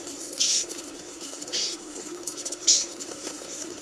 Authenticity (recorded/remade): remade